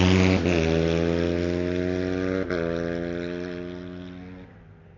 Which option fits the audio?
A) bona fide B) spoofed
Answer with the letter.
A